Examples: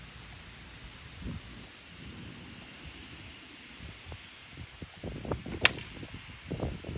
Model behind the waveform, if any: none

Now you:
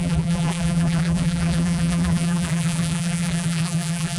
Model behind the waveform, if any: vocoder, BigVGAN v2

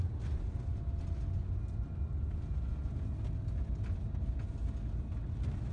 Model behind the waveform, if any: none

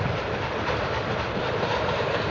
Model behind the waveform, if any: vocoder, BigVGAN v2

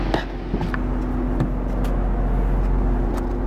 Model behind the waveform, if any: none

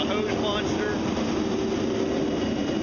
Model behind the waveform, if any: none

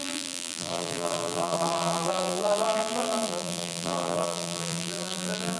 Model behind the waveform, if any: vocoder, BigVGAN v2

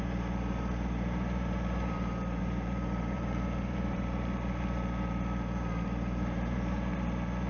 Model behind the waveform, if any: vocoder, BigVGAN v2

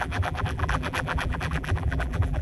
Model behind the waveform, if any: vocoder, BigVGAN v2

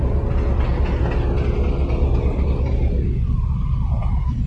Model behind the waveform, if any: none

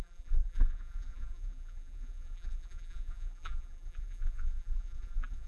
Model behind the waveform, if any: vocoder, BigVGAN v2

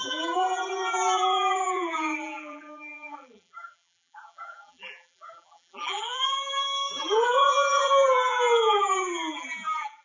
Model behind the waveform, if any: vocoder, BigVGAN v2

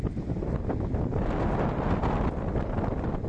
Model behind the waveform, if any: none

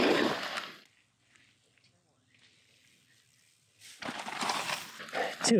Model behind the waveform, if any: none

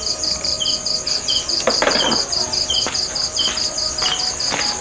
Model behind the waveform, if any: none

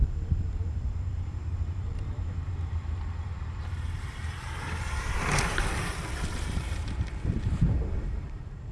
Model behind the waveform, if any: vocoder, BigVGAN v2